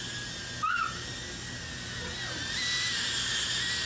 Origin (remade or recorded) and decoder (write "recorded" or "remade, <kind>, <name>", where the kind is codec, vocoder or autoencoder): recorded